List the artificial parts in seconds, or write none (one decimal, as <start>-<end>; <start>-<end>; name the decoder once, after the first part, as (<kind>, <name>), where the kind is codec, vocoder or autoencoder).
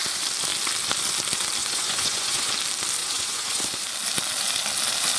1.6-2.5 (vocoder, Vocos); 3.0-3.8